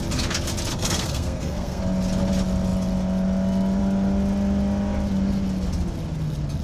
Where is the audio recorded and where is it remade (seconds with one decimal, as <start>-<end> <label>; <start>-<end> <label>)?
0.0-0.7 recorded; 0.7-1.8 remade; 1.8-6.6 recorded